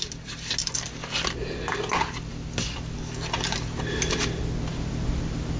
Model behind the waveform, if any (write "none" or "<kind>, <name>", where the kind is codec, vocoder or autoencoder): none